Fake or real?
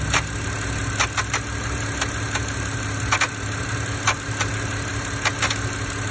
real